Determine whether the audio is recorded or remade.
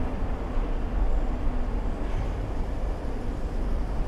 recorded